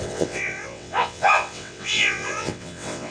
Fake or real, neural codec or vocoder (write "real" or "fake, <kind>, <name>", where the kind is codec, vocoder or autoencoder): fake, vocoder, WaveNeXt